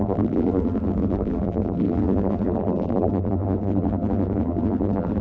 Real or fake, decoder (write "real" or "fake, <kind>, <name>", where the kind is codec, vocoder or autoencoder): fake, vocoder, BigVGAN v2